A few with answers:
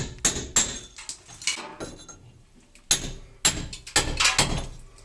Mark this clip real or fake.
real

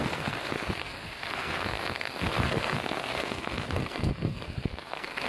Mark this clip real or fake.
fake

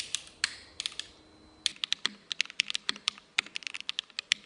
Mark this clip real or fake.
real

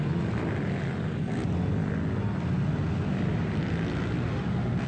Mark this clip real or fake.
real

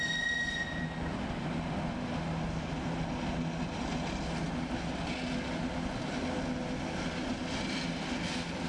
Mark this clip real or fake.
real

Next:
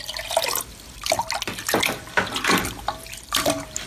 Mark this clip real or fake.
real